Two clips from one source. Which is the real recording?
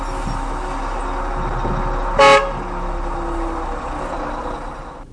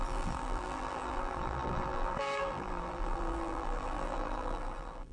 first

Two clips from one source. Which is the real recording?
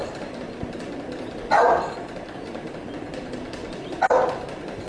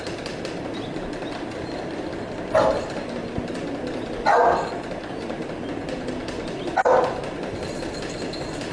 second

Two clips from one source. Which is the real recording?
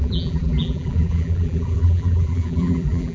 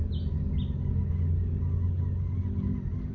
second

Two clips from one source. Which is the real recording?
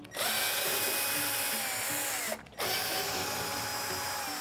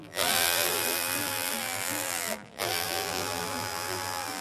first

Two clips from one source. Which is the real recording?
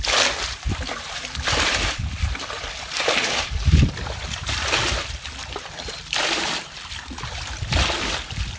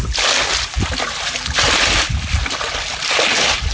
second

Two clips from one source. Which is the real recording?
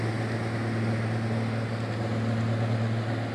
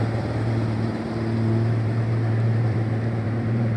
first